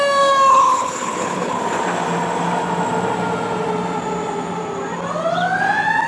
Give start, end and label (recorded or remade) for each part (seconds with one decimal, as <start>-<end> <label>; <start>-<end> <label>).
0.0-0.5 recorded; 0.5-1.6 remade; 1.6-6.1 recorded